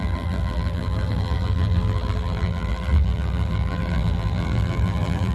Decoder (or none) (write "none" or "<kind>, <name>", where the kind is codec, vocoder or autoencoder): vocoder, BigVGAN v2